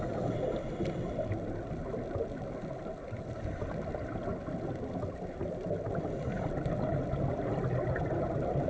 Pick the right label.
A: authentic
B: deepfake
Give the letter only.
A